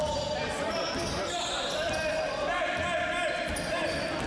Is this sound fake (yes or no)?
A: no